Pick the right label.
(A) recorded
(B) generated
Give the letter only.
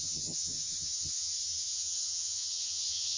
B